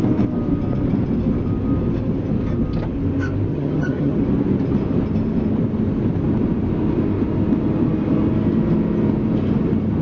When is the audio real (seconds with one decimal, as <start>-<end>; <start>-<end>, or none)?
0.0-3.5; 4.2-10.0